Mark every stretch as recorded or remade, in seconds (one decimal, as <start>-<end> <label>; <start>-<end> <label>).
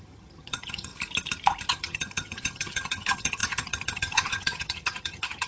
0.0-0.9 remade; 0.9-1.7 recorded; 1.7-5.5 remade